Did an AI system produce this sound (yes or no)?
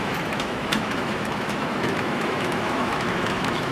yes